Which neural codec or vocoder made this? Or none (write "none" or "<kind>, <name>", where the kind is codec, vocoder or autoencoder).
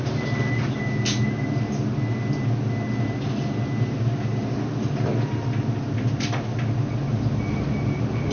none